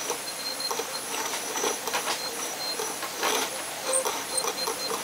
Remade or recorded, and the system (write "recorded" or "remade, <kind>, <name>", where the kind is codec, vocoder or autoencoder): recorded